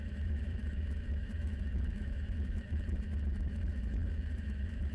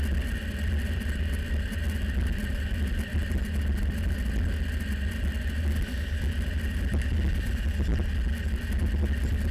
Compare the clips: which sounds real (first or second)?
second